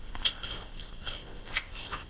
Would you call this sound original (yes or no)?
no